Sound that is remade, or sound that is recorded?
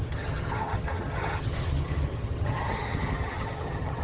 remade